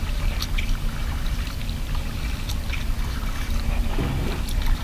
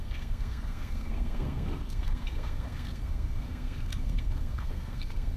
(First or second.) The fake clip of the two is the second